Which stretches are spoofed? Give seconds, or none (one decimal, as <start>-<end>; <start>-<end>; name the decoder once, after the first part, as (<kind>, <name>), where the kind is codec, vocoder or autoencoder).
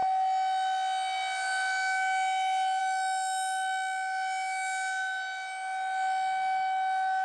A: none